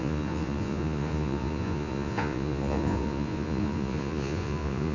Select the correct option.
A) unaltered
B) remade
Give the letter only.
B